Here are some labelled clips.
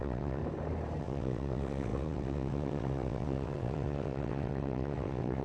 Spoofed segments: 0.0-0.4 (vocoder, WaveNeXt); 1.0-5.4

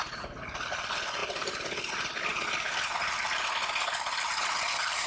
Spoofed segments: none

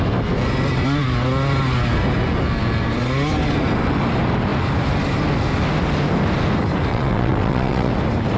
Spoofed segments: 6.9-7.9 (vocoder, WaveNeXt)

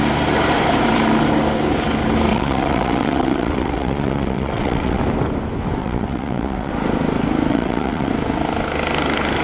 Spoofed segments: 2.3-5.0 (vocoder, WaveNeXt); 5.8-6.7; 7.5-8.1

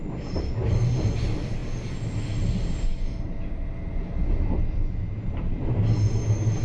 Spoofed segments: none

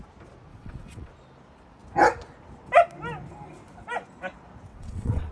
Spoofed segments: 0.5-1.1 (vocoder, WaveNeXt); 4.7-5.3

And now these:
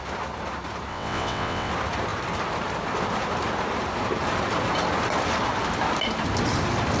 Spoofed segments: 0.9-1.7 (vocoder, WaveNeXt)